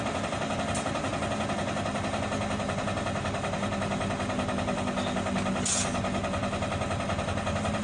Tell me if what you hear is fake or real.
real